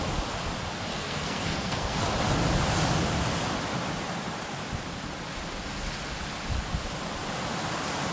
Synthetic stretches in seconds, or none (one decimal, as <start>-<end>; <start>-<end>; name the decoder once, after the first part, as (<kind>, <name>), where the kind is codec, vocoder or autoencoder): 0.9-2.0 (codec, SNAC)